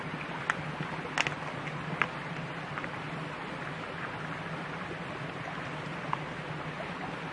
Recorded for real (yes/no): yes